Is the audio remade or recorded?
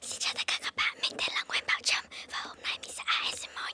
recorded